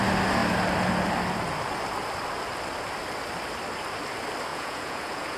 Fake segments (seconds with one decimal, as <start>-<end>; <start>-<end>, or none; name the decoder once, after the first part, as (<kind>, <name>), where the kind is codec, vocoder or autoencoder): 4.5-5.4 (vocoder, Vocos)